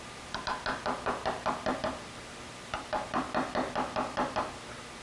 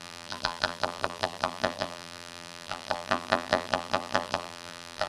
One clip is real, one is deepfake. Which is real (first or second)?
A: first